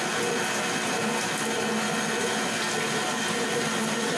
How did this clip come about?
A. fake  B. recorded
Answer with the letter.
B